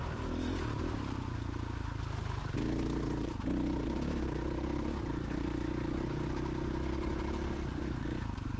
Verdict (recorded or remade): recorded